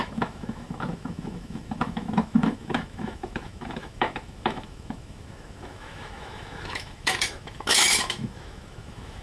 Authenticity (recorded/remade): remade